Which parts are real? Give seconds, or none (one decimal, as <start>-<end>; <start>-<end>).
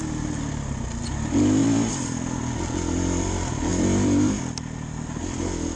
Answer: 0.0-1.6; 2.2-3.7; 4.4-5.8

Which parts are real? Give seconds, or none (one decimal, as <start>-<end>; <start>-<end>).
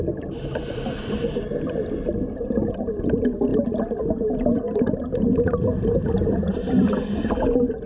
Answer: 0.0-7.9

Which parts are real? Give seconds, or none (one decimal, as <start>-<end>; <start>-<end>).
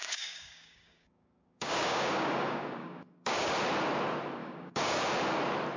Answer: 3.5-4.4; 5.0-5.8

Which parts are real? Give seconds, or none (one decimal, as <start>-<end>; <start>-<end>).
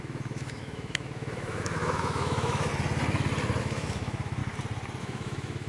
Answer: 2.7-3.6; 4.4-5.0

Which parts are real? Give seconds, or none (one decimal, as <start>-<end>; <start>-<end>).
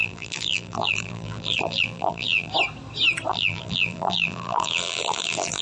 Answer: 2.5-3.3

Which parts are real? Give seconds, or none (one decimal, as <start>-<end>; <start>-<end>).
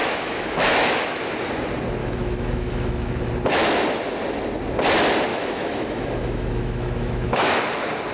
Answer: 1.2-2.0; 3.3-5.3; 7.6-8.1